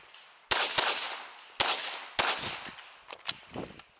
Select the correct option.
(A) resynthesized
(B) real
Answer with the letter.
B